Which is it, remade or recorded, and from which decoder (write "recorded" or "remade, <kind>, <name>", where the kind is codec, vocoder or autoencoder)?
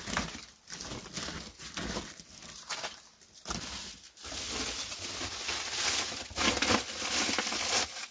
recorded